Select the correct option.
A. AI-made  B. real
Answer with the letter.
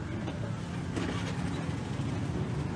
B